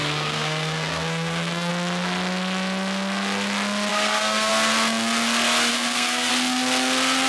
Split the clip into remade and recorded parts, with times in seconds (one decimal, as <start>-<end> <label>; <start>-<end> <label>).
0.0-1.7 remade; 1.7-3.9 recorded; 3.9-4.5 remade; 4.5-5.7 recorded; 5.7-6.3 remade; 6.3-7.3 recorded